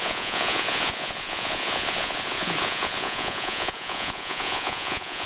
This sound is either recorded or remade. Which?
remade